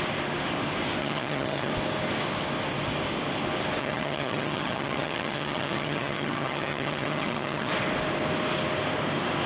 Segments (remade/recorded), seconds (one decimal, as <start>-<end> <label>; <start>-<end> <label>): 0.0-1.0 recorded; 1.0-1.7 remade; 1.7-3.8 recorded; 3.8-7.7 remade; 7.7-9.5 recorded